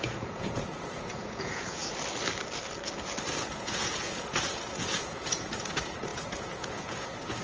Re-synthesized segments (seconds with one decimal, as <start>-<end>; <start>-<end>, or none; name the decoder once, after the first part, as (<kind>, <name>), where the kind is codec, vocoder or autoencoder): 0.0-1.8 (vocoder, Vocos); 3.5-7.4